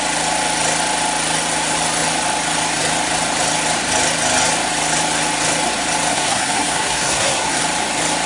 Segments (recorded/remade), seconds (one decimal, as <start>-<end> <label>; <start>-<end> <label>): 0.0-6.1 recorded; 6.1-7.6 remade; 7.6-8.3 recorded